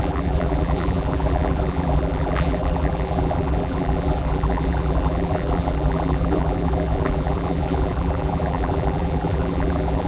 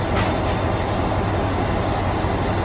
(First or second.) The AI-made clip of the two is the first